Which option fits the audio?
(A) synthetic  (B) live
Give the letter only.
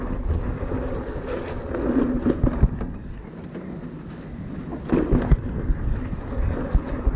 B